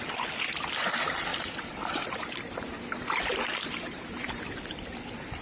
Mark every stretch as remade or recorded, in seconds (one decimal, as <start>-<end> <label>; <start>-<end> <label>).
0.0-1.3 recorded; 1.3-4.5 remade; 4.5-5.4 recorded